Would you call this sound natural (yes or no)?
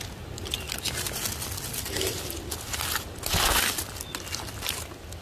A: yes